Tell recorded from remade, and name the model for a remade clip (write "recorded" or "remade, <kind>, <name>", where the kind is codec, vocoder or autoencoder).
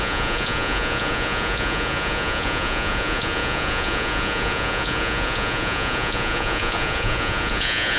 remade, vocoder, Vocos